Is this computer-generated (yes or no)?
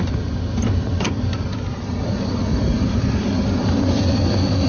no